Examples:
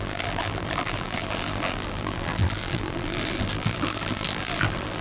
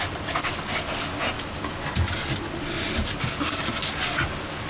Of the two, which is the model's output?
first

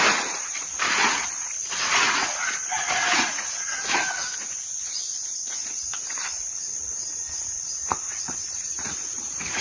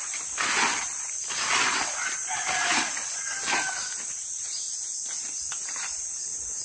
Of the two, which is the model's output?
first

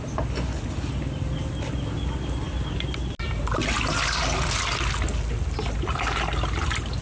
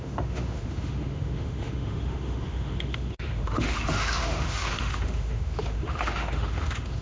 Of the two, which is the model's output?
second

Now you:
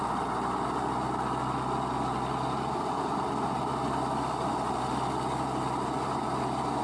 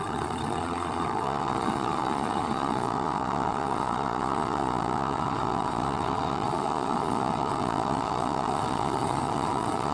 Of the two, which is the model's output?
second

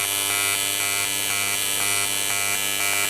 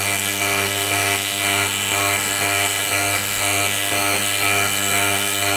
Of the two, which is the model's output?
second